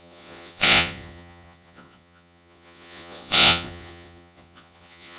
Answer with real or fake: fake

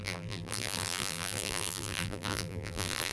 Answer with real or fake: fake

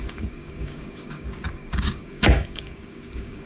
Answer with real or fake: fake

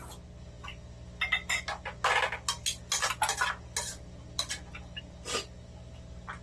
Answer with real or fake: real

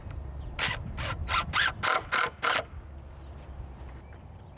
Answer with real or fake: real